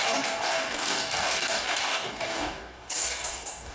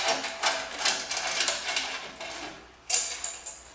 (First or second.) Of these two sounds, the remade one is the first